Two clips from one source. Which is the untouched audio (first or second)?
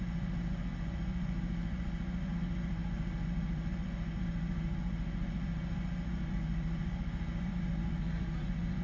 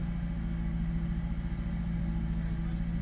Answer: second